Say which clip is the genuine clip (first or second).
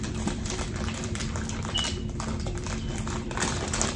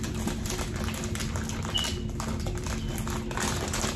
second